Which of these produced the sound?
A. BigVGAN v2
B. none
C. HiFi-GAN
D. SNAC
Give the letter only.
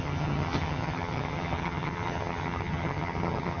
C